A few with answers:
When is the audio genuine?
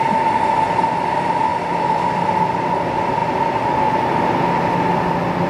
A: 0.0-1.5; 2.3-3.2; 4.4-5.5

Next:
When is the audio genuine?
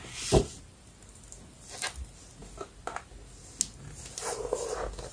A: 0.0-5.1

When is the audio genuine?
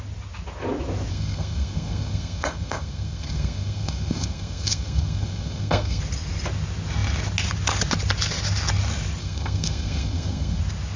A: 0.0-1.1; 6.0-9.2; 10.6-11.0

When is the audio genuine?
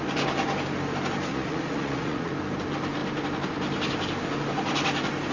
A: 0.0-1.3; 2.3-5.3